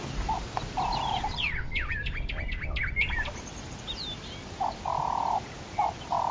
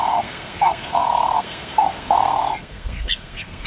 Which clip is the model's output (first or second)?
second